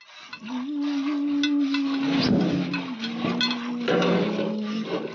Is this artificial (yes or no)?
no